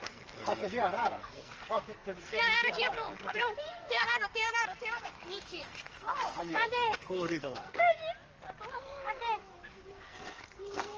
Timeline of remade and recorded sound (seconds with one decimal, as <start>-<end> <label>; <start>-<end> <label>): 0.0-8.0 remade; 8.0-8.7 recorded; 8.7-11.0 remade